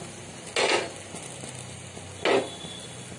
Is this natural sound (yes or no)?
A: yes